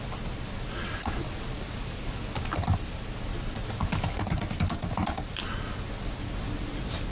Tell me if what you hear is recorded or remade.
recorded